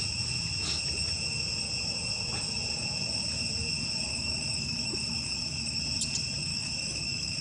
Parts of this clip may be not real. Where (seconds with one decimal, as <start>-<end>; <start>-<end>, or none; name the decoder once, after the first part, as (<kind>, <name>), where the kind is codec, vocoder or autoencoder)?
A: 4.1-5.8 (autoencoder, DAC-VAE); 6.5-7.4

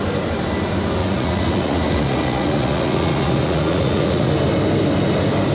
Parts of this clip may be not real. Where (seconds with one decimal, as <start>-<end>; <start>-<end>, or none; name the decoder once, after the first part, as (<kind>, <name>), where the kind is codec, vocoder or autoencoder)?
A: 1.0-4.3 (vocoder, Vocos)

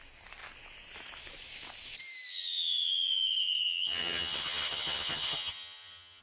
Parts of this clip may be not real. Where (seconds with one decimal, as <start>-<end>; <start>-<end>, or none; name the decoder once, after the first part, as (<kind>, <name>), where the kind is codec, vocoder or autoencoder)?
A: 2.3-6.2 (vocoder, HiFi-GAN)

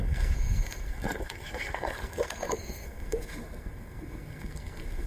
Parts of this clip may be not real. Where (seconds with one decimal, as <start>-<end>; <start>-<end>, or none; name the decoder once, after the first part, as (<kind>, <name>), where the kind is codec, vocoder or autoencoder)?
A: 0.0-5.1 (codec, SNAC)

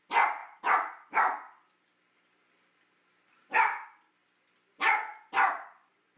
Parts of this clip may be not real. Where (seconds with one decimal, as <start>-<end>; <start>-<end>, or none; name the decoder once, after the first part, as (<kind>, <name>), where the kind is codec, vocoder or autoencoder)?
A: none

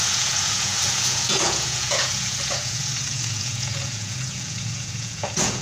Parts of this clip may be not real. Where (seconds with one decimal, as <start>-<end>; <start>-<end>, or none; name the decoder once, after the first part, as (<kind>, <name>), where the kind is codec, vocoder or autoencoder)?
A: 0.0-5.6 (vocoder, Vocos)